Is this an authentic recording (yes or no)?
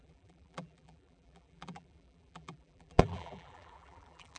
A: no